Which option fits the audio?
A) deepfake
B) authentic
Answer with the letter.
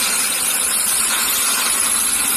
A